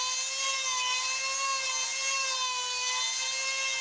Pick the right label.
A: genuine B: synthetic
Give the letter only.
A